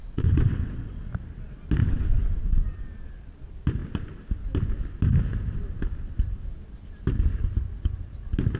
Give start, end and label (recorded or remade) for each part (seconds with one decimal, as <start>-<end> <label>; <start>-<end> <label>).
0.0-1.1 remade; 1.1-1.8 recorded; 1.8-2.4 remade; 2.4-8.6 recorded